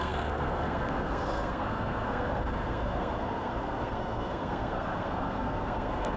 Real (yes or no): no